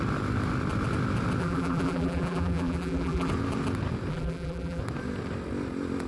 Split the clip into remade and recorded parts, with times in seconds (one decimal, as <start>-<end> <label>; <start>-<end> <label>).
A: 0.0-1.4 recorded; 1.4-3.3 remade; 3.3-4.1 recorded; 4.1-4.8 remade; 4.8-6.1 recorded